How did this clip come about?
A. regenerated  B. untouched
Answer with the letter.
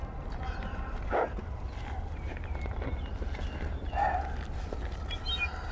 B